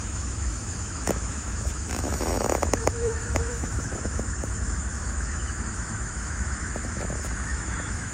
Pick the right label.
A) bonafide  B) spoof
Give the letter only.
B